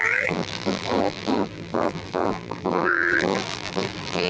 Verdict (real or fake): fake